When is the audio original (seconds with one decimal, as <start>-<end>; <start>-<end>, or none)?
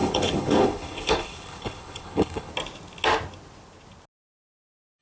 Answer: 2.5-5.0